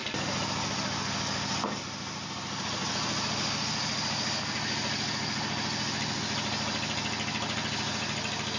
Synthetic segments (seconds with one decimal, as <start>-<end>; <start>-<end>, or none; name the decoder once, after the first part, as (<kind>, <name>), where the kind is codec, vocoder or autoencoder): none